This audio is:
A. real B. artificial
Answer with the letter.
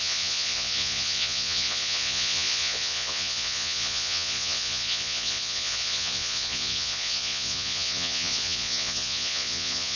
B